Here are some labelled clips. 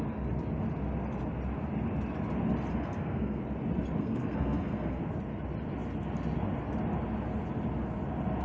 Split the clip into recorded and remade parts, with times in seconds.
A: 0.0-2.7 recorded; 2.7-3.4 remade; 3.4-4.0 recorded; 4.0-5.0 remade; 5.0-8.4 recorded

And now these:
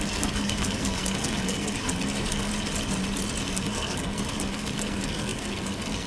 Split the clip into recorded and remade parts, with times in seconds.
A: 0.0-2.5 remade; 2.5-3.4 recorded; 3.4-6.1 remade